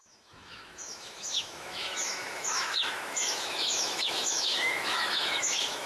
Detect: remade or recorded remade